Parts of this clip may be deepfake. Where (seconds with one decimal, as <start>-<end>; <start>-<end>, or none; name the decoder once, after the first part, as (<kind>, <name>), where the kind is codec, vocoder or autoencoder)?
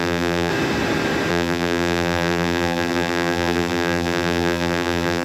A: 0.0-0.5 (vocoder, BigVGAN v2); 1.3-5.2